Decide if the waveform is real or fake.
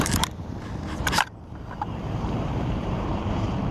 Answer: fake